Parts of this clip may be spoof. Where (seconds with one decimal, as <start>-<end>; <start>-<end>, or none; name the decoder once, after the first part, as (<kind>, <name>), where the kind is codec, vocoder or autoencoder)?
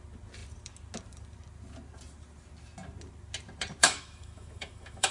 3.8-5.1 (autoencoder, DAC-VAE)